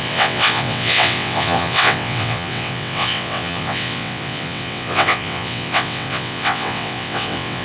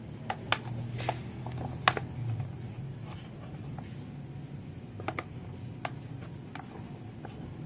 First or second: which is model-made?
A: first